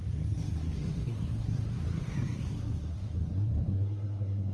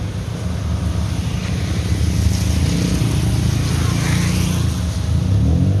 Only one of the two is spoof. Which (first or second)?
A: first